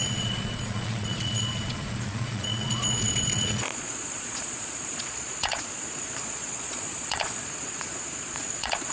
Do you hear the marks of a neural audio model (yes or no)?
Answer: yes